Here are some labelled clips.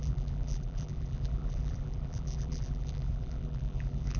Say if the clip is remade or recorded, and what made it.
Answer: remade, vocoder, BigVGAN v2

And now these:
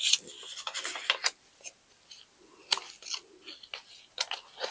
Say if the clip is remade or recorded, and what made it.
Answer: recorded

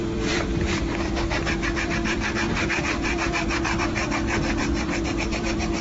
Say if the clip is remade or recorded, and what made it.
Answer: remade, vocoder, BigVGAN v2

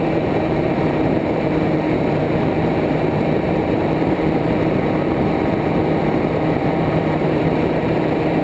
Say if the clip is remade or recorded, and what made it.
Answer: remade, vocoder, BigVGAN v2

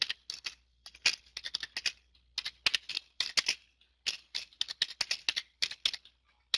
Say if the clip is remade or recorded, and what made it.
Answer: recorded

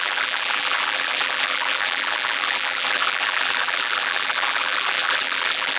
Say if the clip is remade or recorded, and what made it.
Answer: remade, vocoder, BigVGAN v2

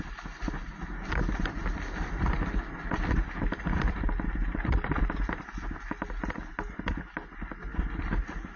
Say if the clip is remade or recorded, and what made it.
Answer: recorded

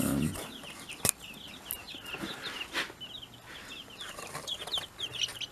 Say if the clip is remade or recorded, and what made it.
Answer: recorded